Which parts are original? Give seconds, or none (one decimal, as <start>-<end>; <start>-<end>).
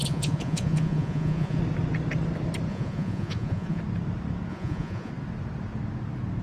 1.6-2.7; 3.8-4.5; 5.1-6.4